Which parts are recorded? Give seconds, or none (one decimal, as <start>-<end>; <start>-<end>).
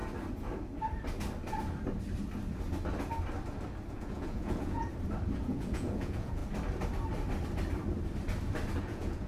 0.0-3.9; 4.8-5.4; 6.4-8.8